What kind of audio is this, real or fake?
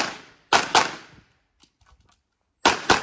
real